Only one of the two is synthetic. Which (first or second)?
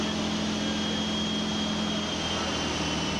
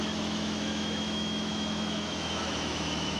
second